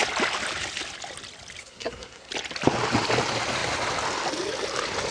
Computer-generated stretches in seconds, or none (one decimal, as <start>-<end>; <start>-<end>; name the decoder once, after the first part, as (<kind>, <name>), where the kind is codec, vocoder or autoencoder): 1.6-2.3 (codec, SNAC)